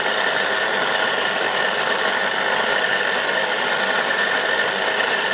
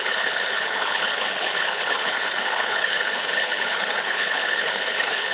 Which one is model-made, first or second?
second